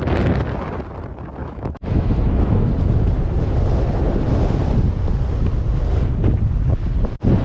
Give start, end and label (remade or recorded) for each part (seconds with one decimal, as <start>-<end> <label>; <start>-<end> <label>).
0.0-1.4 recorded; 1.4-2.7 remade; 2.7-7.4 recorded